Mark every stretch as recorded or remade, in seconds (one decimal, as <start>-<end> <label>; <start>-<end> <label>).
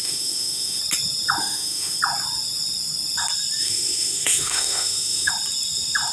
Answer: 0.0-0.8 remade; 0.8-1.4 recorded; 1.4-2.0 remade; 2.0-3.6 recorded; 3.6-5.3 remade; 5.3-6.1 recorded